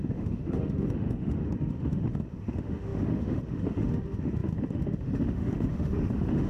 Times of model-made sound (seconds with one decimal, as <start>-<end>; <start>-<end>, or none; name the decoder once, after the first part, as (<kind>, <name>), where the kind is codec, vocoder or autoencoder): 0.0-6.5 (autoencoder, DAC-VAE)